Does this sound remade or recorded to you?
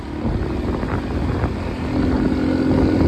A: recorded